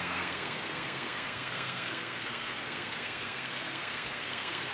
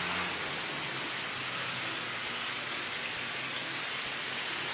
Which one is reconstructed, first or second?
first